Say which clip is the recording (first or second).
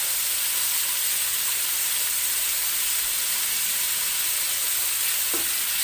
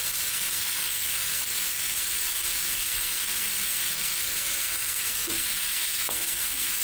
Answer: first